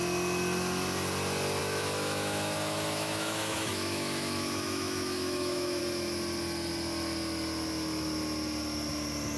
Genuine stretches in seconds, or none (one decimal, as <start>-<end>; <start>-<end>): 0.0-1.6; 5.8-9.4